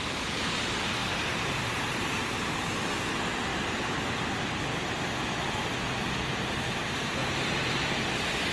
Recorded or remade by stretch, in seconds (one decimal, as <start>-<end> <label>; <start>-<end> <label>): 0.0-1.0 recorded; 1.0-3.1 remade; 3.1-3.5 recorded; 3.5-5.1 remade; 5.1-7.2 recorded; 7.2-7.9 remade; 7.9-8.5 recorded